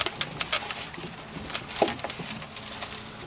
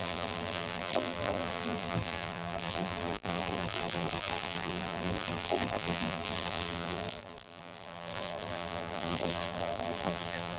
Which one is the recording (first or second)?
first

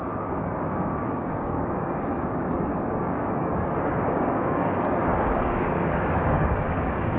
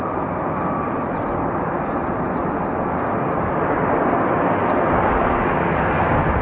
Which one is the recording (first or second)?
second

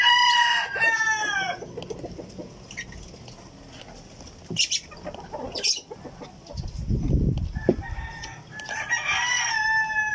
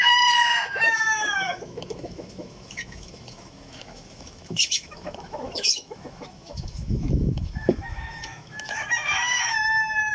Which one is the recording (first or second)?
first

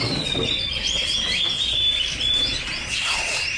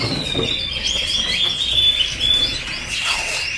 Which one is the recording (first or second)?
second